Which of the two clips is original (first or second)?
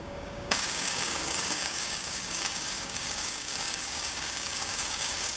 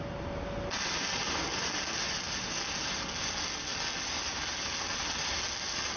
second